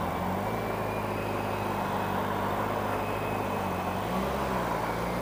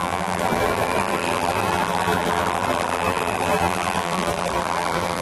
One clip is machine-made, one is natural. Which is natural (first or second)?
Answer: first